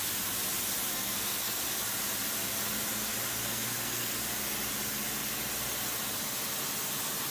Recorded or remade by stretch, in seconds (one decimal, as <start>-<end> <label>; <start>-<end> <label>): 0.0-0.9 recorded; 0.9-1.6 remade; 1.6-3.4 recorded; 3.4-4.3 remade; 4.3-7.3 recorded